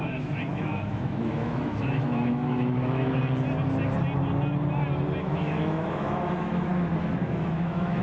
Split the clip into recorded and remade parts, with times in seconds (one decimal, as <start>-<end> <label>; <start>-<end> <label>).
0.0-3.2 remade; 3.2-5.2 recorded; 5.2-6.7 remade; 6.7-7.2 recorded; 7.2-8.0 remade